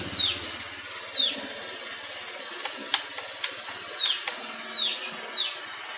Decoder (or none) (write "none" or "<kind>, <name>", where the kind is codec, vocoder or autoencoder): none